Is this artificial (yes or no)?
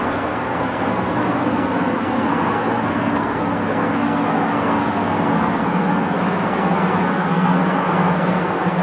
yes